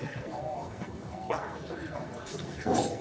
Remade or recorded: remade